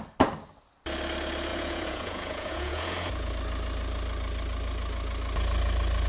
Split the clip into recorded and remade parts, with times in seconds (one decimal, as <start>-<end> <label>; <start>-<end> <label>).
0.0-1.5 recorded; 1.5-3.3 remade; 3.3-6.1 recorded